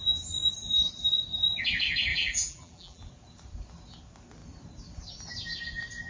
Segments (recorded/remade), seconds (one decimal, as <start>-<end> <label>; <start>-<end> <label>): 0.0-2.1 recorded; 2.1-3.0 remade; 3.0-6.1 recorded